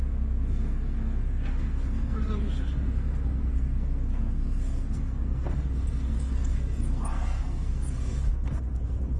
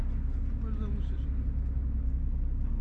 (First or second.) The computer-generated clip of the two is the first